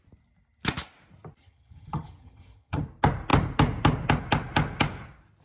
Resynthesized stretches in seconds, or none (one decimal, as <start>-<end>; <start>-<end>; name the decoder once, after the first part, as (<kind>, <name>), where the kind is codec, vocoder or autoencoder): 1.4-2.8 (vocoder, HiFi-GAN)